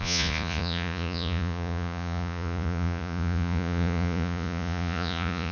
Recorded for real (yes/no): no